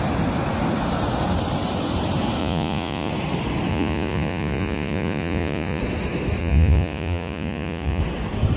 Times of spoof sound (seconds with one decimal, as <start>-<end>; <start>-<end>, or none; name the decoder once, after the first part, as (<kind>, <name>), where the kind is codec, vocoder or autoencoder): 2.4-3.1 (vocoder, Vocos); 3.7-5.8; 6.4-8.0